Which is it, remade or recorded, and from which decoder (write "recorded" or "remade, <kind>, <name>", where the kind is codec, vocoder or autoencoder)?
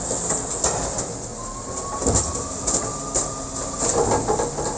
recorded